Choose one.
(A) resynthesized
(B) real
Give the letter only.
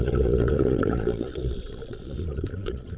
A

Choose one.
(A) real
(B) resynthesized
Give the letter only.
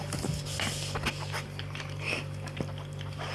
A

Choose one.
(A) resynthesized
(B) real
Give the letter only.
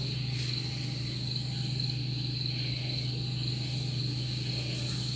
B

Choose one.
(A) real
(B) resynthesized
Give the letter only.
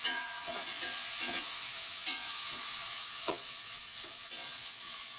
B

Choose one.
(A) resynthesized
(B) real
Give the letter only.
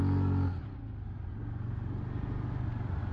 B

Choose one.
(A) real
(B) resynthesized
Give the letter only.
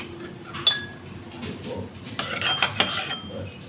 A